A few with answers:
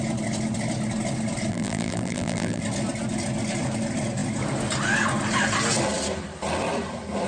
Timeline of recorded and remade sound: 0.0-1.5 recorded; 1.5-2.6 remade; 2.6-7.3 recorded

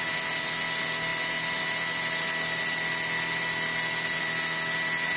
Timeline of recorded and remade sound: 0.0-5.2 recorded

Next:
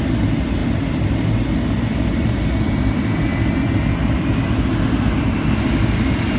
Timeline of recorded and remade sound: 0.0-6.4 recorded

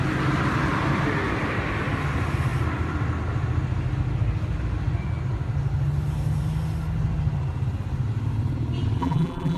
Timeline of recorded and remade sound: 0.0-9.0 recorded; 9.0-9.6 remade

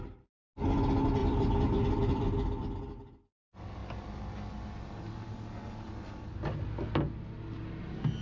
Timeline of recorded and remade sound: 0.0-1.2 recorded; 1.2-2.8 remade; 2.8-8.2 recorded

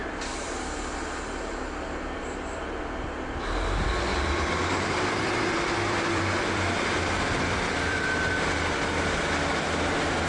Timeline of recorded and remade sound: 0.0-2.8 remade; 2.8-4.1 recorded; 4.1-8.3 remade; 8.3-10.3 recorded

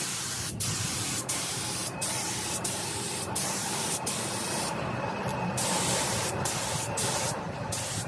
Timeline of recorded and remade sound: 0.0-1.8 recorded; 1.8-4.8 remade; 4.8-8.1 recorded